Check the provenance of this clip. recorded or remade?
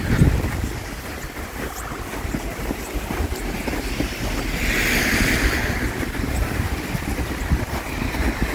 recorded